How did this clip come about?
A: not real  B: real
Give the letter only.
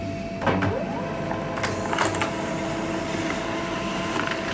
B